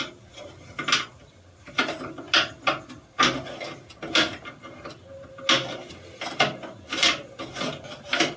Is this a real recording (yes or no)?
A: yes